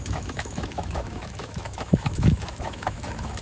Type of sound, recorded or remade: remade